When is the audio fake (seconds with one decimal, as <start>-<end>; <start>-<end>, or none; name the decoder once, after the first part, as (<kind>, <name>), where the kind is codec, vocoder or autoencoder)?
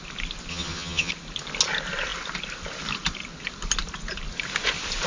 0.5-1.1 (vocoder, HiFi-GAN)